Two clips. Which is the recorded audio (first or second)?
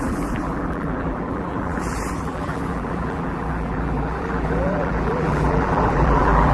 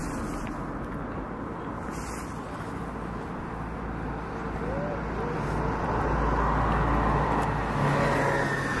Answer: second